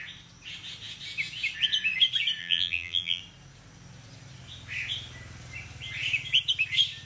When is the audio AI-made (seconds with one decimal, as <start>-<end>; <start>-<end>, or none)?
2.4-3.2